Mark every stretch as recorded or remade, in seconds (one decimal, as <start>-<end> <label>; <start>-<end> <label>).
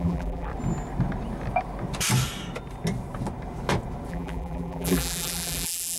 0.0-0.5 remade; 0.5-4.1 recorded; 4.1-6.0 remade